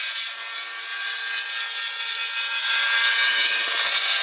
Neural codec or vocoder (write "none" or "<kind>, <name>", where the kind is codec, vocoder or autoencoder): none